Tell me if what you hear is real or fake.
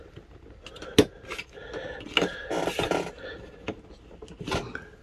real